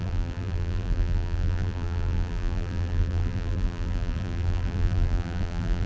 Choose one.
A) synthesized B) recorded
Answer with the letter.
A